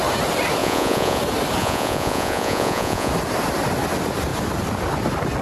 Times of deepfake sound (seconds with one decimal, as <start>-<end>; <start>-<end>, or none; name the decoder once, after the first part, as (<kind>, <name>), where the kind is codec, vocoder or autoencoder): 0.6-1.2 (vocoder, Vocos); 1.6-3.1